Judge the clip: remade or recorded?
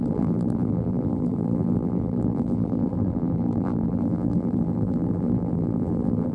remade